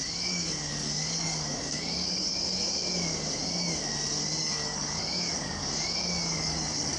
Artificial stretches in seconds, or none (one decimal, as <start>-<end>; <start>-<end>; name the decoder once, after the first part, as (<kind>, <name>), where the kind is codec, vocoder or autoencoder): 0.0-3.4 (codec, DAC); 4.4-7.0